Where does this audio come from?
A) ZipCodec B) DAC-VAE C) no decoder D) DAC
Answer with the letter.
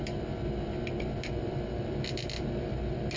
C